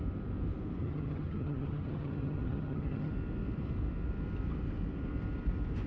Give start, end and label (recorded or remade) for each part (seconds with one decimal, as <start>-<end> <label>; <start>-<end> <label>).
0.0-0.8 recorded; 0.8-3.1 remade; 3.1-5.9 recorded